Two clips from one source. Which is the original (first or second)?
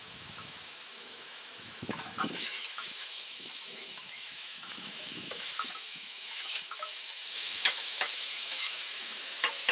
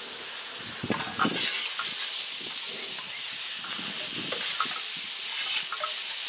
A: second